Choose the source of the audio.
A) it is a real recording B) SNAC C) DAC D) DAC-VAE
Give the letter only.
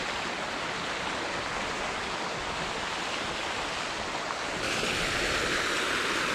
A